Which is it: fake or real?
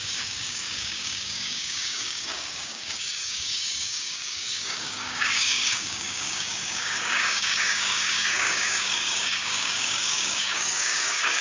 fake